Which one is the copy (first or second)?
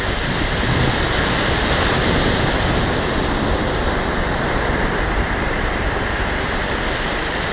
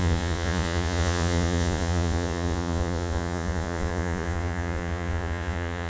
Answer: second